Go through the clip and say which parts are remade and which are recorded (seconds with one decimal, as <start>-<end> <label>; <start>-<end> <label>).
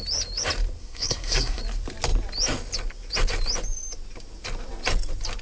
0.0-0.8 recorded; 0.8-1.6 remade; 1.6-5.4 recorded